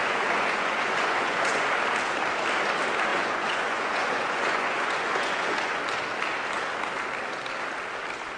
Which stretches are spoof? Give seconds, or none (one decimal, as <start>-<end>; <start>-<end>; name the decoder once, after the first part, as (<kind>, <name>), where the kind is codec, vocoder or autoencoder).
0.0-1.7 (vocoder, Vocos); 3.1-5.8